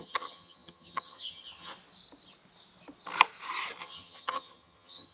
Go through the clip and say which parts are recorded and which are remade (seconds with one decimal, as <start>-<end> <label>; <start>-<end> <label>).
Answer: 0.0-1.7 remade; 1.7-3.8 recorded; 3.8-5.1 remade